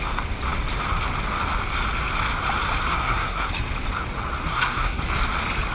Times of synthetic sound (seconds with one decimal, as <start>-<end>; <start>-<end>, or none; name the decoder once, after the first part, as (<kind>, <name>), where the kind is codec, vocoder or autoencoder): 2.9-3.5 (codec, SNAC); 4.4-5.0